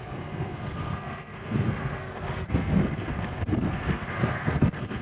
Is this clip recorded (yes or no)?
no